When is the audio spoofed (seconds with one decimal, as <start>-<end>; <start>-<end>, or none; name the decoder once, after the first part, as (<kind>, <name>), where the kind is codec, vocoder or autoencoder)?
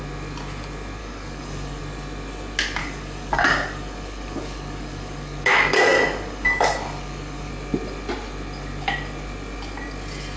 1.0-1.8 (codec, DAC); 2.8-7.5